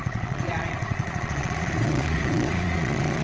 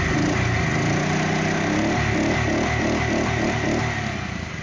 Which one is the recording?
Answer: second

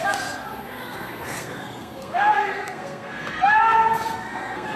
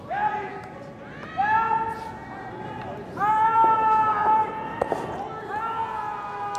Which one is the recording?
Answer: second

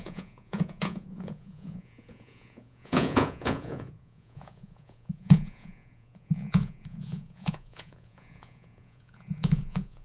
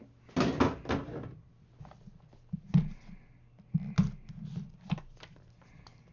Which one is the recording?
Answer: second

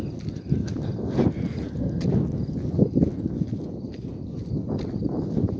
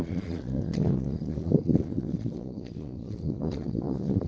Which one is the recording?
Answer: first